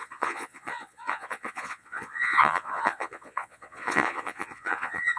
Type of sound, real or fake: fake